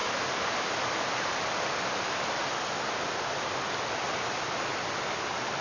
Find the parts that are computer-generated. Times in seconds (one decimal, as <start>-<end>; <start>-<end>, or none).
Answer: none